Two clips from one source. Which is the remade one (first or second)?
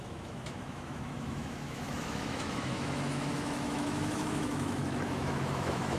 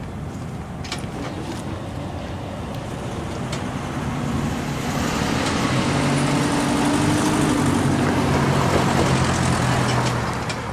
first